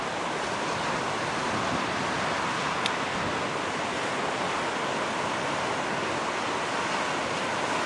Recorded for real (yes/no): yes